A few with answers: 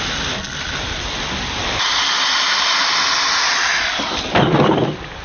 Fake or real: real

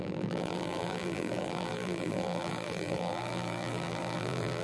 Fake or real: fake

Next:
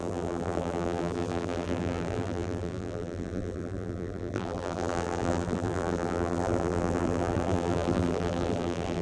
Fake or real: fake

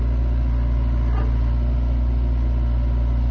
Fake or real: real